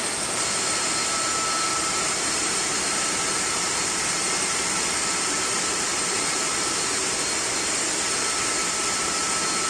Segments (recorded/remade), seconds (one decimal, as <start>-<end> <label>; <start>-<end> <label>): 0.0-1.7 recorded; 1.7-6.7 remade; 6.7-8.6 recorded; 8.6-9.2 remade; 9.2-9.7 recorded